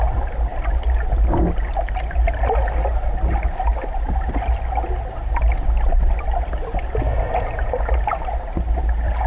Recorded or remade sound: recorded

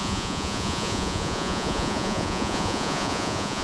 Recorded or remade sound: remade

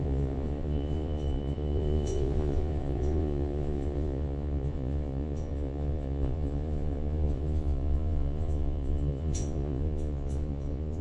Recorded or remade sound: remade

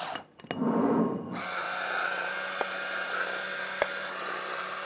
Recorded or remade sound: recorded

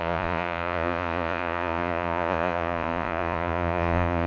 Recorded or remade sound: remade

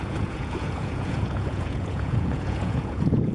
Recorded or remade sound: remade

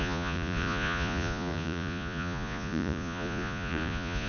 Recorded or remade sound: remade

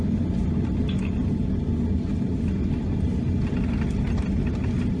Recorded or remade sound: recorded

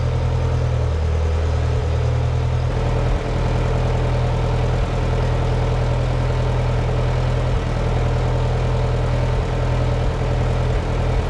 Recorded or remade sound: recorded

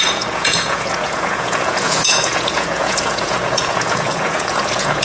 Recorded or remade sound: remade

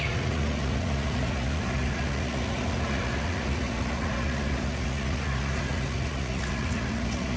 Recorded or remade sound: remade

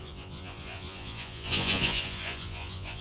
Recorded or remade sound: remade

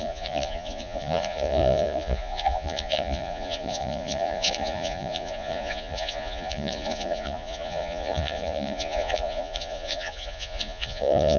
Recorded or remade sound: remade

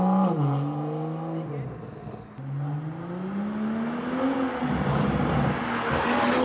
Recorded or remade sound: recorded